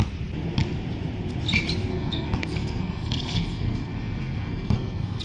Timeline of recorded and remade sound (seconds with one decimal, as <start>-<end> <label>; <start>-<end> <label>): 0.0-1.9 recorded; 1.9-5.2 remade